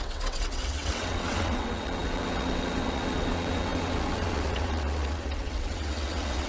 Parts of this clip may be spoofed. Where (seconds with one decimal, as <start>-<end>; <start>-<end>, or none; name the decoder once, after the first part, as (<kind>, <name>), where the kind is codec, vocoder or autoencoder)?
0.0-6.5 (vocoder, WaveNeXt)